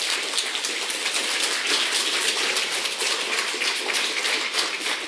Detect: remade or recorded recorded